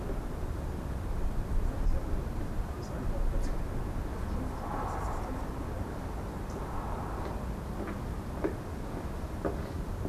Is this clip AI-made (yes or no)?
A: no